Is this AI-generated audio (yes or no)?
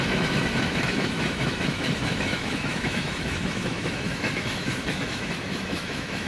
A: yes